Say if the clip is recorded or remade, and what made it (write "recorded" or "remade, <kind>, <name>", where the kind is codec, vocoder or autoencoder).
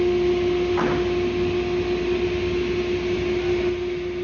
recorded